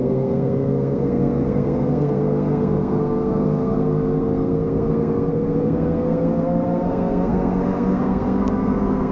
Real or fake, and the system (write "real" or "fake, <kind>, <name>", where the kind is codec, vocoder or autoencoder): fake, codec, SNAC